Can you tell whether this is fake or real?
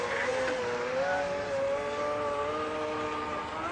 real